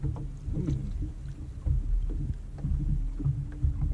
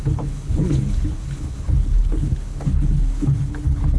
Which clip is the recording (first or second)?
first